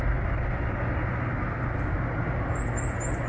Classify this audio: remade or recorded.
recorded